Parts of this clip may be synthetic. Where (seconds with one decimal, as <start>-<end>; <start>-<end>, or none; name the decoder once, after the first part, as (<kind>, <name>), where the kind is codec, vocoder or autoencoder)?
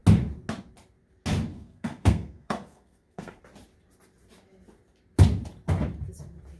1.5-3.4 (codec, SNAC)